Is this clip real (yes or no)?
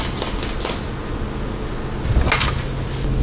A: yes